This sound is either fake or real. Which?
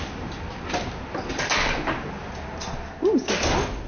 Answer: real